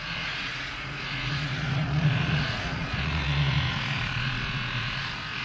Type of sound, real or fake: fake